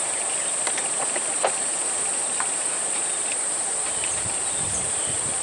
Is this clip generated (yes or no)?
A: yes